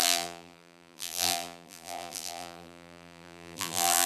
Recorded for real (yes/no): no